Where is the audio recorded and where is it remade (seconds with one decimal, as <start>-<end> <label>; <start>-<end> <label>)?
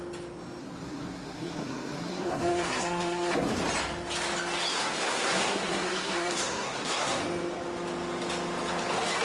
0.0-0.6 recorded; 0.6-3.5 remade; 3.5-4.7 recorded; 4.7-7.2 remade; 7.2-9.2 recorded